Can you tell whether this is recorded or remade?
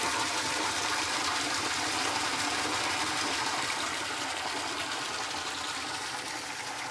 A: remade